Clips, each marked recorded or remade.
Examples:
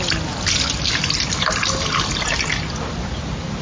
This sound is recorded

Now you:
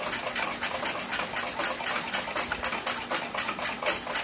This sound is recorded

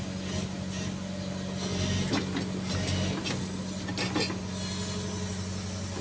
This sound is recorded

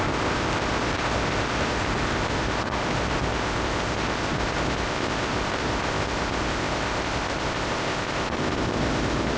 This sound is remade